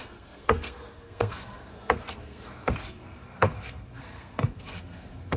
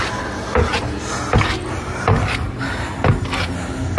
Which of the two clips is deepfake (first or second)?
first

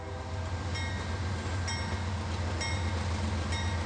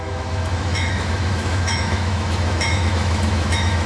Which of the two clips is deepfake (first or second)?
second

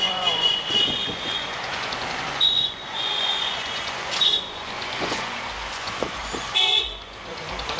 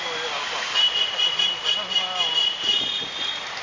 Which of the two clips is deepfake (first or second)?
first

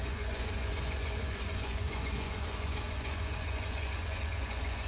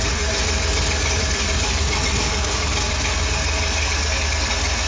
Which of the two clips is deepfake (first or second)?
first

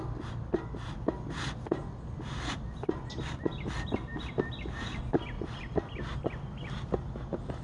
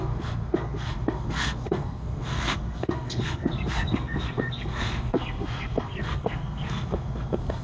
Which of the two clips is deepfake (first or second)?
second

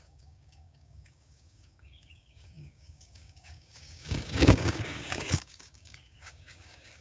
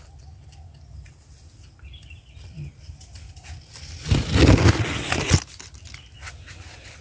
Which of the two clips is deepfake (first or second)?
first